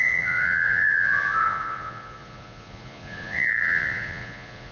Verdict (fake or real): fake